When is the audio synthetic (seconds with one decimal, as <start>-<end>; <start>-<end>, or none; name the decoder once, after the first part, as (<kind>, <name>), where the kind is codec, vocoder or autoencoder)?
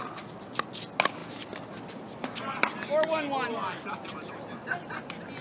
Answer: none